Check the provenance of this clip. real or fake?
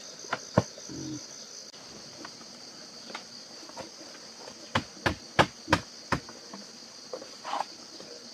real